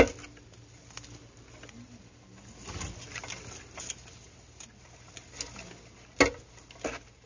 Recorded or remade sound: recorded